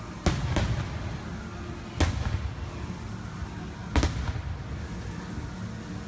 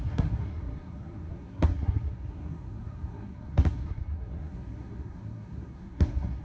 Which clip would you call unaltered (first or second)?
first